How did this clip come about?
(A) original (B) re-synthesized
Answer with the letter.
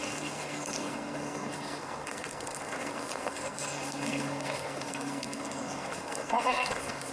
B